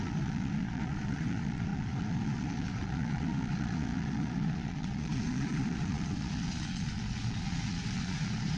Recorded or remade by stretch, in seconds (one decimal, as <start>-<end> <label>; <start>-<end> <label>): 0.0-8.6 remade